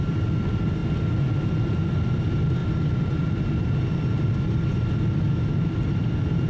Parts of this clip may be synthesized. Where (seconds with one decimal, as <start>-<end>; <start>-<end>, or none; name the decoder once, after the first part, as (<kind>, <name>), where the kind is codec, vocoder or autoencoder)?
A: none